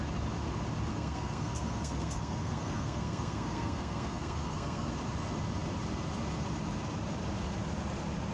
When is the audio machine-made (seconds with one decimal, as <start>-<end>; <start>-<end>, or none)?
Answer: 0.9-4.9